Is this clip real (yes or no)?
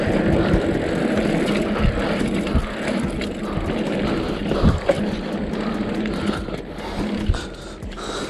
yes